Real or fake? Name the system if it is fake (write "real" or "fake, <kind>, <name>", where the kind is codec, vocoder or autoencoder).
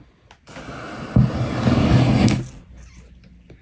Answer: real